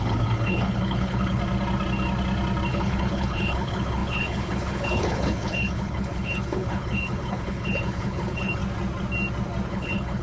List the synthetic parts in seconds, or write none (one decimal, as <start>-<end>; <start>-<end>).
0.0-1.4; 2.7-8.6; 9.7-10.2